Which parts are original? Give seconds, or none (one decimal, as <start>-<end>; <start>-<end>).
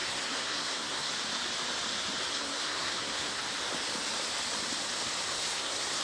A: 1.1-2.3; 3.4-5.3